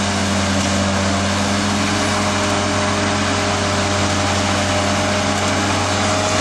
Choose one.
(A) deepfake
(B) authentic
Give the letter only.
B